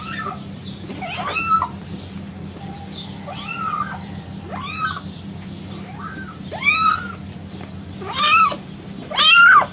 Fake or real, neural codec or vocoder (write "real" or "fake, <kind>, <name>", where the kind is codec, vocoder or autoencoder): real